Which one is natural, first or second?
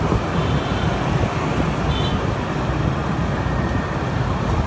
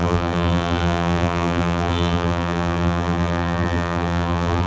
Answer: first